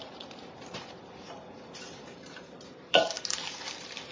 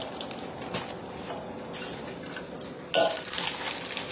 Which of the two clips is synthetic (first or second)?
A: first